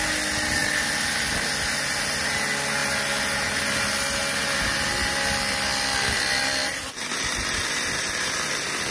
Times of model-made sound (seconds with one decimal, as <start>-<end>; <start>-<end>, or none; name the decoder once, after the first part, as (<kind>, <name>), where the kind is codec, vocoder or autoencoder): none